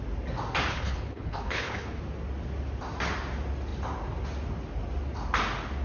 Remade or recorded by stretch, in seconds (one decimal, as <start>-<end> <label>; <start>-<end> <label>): 0.0-0.7 recorded; 0.7-2.0 remade; 2.0-5.8 recorded

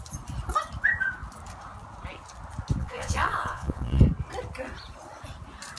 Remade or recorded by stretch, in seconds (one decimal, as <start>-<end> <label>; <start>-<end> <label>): 0.0-2.8 recorded; 2.8-4.0 remade; 4.0-5.8 recorded